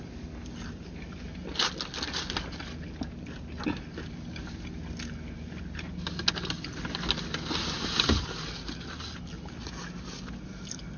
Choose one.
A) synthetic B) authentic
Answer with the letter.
B